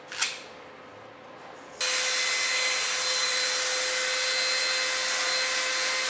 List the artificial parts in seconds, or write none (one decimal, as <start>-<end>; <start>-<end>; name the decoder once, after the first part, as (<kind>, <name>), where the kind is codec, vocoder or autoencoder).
none